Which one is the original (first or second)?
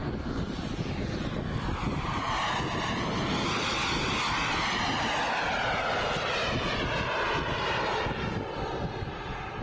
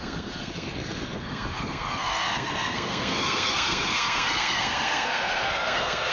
first